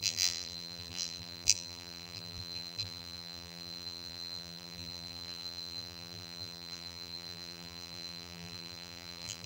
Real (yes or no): no